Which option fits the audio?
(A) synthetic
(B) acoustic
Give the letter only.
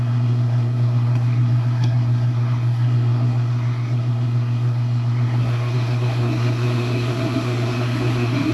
A